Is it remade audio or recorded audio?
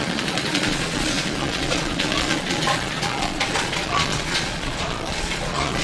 remade